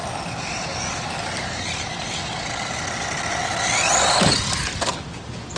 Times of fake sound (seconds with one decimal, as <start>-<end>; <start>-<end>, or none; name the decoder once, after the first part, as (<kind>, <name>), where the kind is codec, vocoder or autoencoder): none